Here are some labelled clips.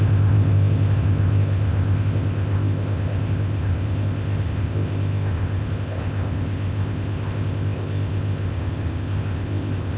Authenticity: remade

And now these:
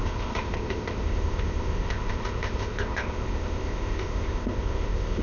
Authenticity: remade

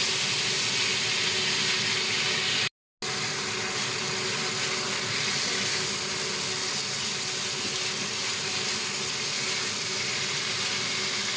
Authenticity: recorded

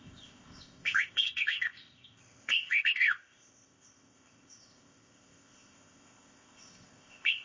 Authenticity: remade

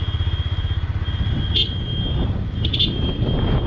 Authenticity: recorded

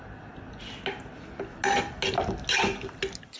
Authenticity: recorded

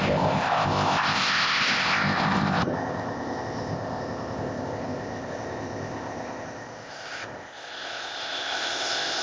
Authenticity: remade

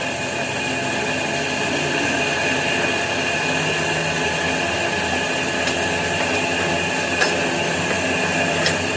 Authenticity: recorded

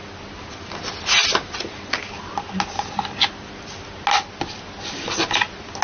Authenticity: recorded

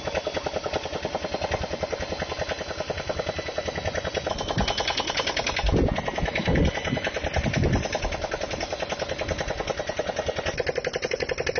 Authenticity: recorded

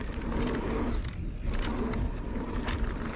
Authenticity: recorded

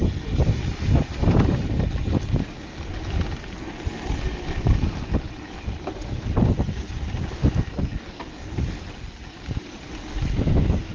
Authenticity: recorded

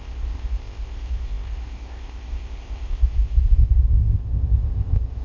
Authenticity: remade